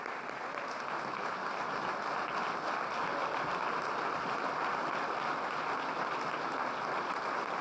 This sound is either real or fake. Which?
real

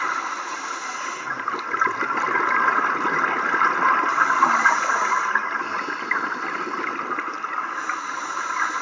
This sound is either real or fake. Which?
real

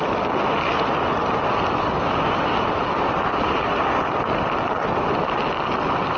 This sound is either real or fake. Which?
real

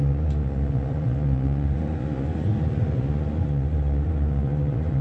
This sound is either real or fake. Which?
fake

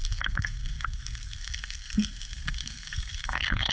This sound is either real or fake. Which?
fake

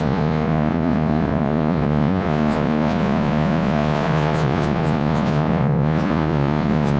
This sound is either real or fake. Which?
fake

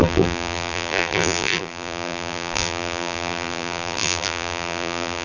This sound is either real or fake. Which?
fake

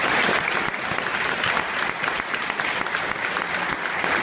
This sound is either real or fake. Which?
real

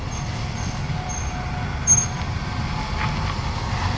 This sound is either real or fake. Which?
real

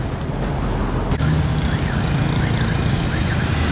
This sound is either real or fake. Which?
real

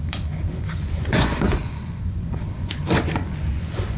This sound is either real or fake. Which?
fake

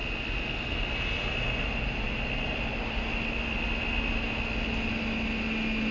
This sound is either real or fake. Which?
real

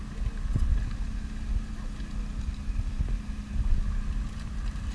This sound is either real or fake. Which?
real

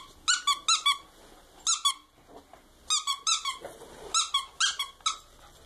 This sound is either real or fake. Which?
real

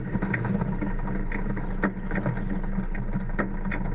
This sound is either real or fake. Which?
real